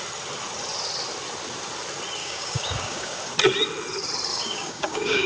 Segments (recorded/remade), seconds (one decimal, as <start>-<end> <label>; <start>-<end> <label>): 0.0-2.2 recorded; 2.2-3.2 remade; 3.2-4.3 recorded; 4.3-5.3 remade